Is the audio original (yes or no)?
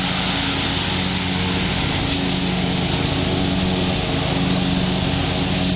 yes